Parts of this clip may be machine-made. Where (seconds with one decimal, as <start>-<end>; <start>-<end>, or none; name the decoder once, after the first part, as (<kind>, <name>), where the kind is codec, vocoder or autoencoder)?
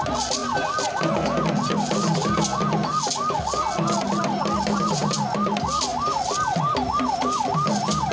none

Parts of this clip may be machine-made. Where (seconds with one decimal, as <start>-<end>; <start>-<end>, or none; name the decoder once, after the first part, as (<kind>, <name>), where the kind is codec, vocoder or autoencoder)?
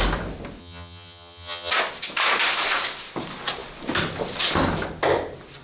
0.6-1.7 (vocoder, HiFi-GAN)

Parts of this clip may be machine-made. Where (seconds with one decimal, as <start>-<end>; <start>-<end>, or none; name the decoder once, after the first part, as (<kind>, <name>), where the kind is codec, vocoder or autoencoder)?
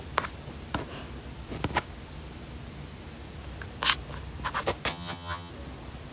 4.9-5.5 (vocoder, HiFi-GAN)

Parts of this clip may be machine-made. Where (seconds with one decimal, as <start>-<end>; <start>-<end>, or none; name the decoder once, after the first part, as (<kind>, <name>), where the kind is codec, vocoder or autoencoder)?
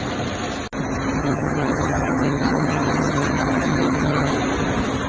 1.2-4.3 (vocoder, HiFi-GAN)